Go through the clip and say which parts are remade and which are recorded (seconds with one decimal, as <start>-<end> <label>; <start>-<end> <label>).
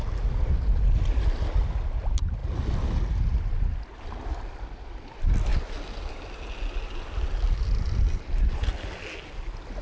0.0-9.8 recorded